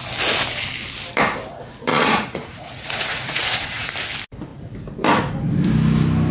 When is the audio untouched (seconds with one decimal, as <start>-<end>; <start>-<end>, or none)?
0.0-1.9; 3.9-6.3